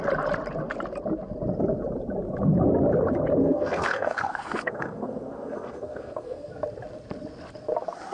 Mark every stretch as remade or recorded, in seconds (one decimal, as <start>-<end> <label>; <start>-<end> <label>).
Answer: 0.0-3.4 recorded; 3.4-6.5 remade; 6.5-8.1 recorded